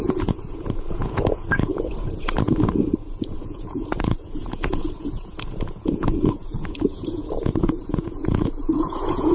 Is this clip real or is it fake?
fake